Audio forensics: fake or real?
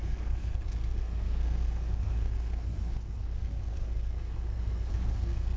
fake